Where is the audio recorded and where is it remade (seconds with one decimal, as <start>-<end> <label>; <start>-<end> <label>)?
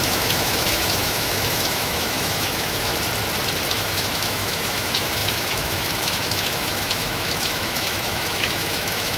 0.0-2.9 remade; 2.9-3.7 recorded; 3.7-9.2 remade